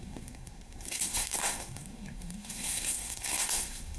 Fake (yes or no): yes